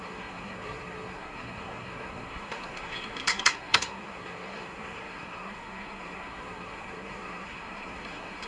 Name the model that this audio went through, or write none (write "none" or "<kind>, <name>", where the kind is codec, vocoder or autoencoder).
codec, SNAC